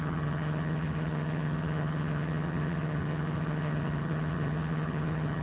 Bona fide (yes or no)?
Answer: no